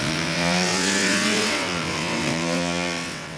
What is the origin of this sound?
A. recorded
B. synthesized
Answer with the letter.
B